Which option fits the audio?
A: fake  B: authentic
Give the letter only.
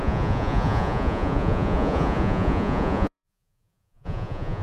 A